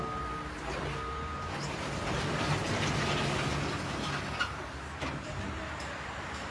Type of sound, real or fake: real